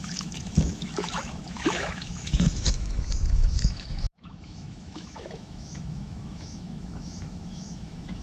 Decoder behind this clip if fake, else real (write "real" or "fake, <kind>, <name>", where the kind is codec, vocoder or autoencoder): fake, autoencoder, DAC-VAE